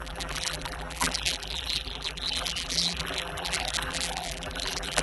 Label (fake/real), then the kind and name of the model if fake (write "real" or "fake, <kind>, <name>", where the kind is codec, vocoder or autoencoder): fake, vocoder, BigVGAN v2